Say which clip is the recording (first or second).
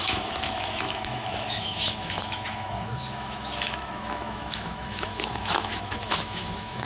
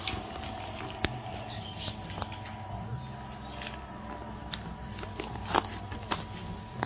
second